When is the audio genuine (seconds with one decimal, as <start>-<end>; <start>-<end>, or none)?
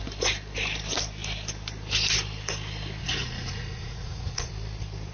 0.0-3.0; 4.5-5.1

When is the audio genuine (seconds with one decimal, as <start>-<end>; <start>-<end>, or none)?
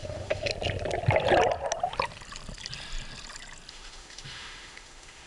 0.5-3.7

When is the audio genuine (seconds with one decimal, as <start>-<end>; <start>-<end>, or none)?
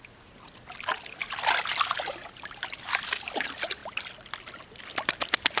0.0-5.6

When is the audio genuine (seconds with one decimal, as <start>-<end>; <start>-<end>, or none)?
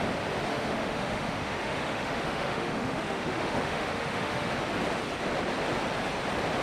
0.0-0.5; 4.5-6.6